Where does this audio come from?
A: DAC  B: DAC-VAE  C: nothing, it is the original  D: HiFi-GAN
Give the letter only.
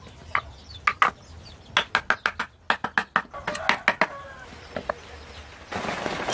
C